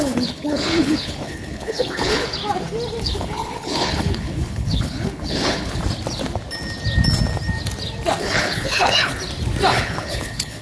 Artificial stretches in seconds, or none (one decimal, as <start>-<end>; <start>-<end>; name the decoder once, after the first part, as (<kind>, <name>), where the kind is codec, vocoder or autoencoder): 0.0-2.4 (codec, HILCodec); 3.0-5.8; 8.2-9.1; 9.7-10.6